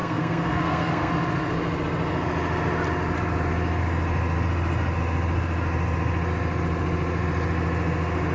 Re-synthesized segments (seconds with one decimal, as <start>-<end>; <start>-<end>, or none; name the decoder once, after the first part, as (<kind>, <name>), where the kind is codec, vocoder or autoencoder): 0.0-1.1 (codec, SNAC)